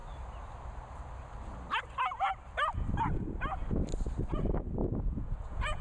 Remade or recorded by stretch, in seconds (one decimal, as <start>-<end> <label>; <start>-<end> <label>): 0.0-4.8 recorded; 4.8-5.8 remade